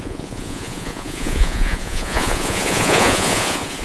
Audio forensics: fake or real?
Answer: fake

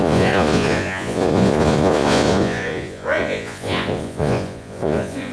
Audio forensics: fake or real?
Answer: fake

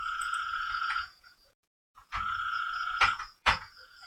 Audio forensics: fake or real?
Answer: fake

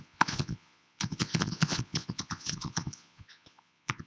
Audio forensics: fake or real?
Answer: fake